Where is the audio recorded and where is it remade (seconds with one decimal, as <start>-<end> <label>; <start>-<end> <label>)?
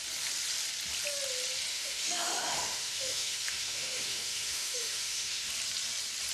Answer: 0.0-1.7 recorded; 1.7-5.5 remade; 5.5-6.3 recorded